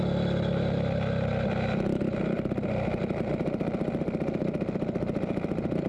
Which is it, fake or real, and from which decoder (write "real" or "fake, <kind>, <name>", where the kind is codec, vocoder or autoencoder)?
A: real